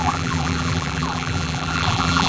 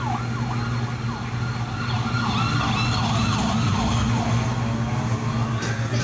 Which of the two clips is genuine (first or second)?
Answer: second